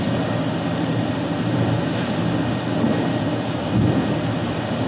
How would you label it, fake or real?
real